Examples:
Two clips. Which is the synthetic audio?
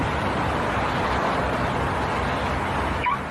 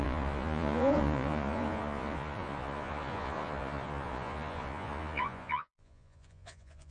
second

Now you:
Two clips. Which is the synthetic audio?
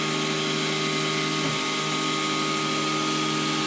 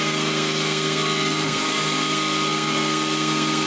second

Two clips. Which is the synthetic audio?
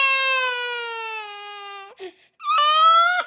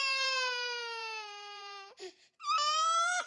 second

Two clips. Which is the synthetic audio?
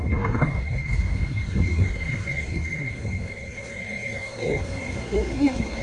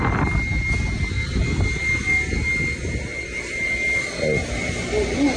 first